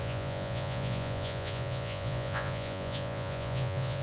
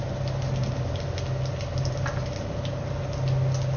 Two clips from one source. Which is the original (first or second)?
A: second